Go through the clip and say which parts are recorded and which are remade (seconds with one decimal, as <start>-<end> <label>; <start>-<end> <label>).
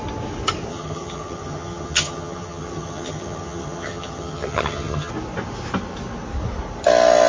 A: 0.0-0.7 recorded; 0.7-5.1 remade; 5.1-7.3 recorded